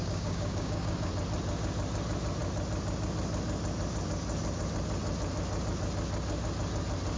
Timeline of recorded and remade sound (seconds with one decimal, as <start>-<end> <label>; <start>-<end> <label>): 0.0-1.1 remade; 1.1-7.2 recorded